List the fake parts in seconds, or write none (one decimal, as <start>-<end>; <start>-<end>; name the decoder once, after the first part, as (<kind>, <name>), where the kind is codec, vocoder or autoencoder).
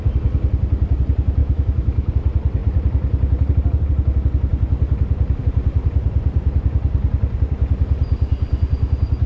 1.4-2.1 (autoencoder, DAC-VAE)